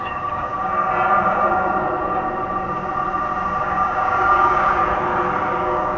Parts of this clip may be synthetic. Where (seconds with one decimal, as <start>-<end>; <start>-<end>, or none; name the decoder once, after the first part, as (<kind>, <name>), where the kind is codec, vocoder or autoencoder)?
0.0-0.5 (codec, DAC); 3.6-4.8; 5.6-6.0